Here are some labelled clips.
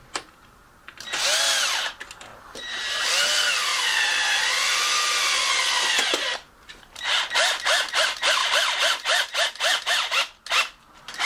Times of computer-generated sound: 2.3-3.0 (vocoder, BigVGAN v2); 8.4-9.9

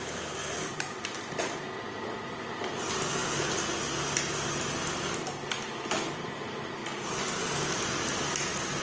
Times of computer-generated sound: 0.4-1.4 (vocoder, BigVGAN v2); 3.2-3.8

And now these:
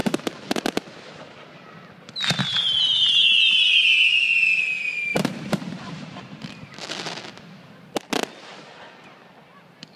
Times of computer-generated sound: 0.0-0.6 (vocoder, BigVGAN v2); 5.1-6.5

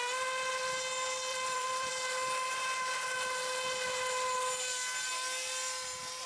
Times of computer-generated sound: 1.3-1.9 (vocoder, BigVGAN v2)

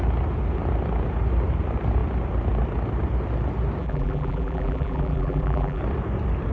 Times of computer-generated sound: 3.8-5.8 (vocoder, BigVGAN v2)

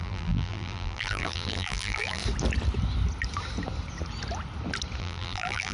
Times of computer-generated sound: 0.0-2.2 (vocoder, BigVGAN v2); 5.0-5.7

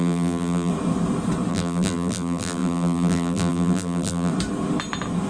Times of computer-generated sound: 0.0-0.7 (vocoder, BigVGAN v2); 1.5-4.3